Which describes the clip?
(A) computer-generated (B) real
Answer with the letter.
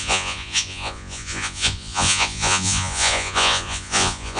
A